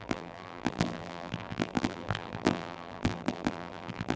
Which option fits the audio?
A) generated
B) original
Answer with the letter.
A